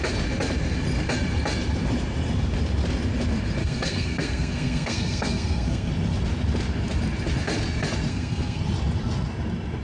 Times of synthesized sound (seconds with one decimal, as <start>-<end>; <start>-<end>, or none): 3.6-5.9; 8.1-8.6